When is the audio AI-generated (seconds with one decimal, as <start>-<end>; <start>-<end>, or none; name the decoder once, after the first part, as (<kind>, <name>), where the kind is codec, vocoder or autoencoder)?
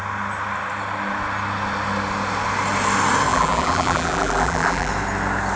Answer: 3.3-4.9 (vocoder, BigVGAN v2)